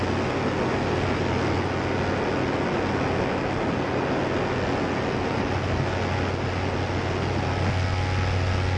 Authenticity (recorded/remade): recorded